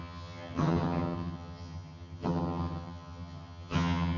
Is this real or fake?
fake